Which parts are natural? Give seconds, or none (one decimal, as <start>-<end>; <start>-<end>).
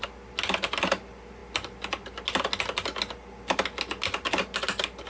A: 0.0-5.1